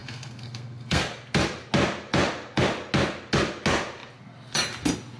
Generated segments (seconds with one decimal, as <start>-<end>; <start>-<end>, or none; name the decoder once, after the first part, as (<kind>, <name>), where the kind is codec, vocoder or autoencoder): 0.0-1.0 (codec, SNAC)